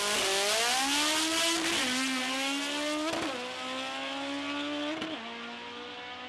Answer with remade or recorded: recorded